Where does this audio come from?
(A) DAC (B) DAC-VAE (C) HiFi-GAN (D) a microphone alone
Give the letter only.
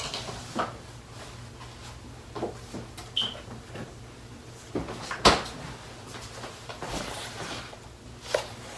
D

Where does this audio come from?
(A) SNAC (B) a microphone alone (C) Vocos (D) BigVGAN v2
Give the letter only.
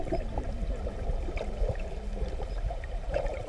D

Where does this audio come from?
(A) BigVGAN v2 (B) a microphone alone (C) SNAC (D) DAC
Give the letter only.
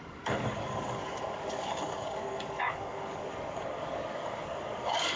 D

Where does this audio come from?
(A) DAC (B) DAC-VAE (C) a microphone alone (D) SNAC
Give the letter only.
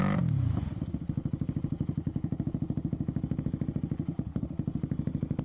C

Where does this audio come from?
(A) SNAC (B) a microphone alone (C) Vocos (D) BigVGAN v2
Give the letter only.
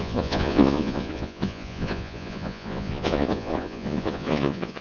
C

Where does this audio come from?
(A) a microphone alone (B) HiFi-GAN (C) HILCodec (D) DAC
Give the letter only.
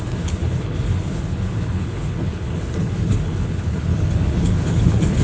C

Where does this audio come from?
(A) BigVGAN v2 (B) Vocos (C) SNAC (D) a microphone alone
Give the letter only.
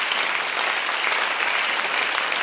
D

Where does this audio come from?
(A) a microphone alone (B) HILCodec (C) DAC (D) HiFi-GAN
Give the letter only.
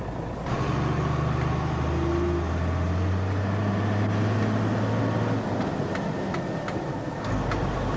A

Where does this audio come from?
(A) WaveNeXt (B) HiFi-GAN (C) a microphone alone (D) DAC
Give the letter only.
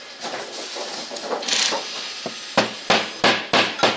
C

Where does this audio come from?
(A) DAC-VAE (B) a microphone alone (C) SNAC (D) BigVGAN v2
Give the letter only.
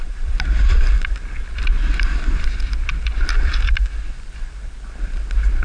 D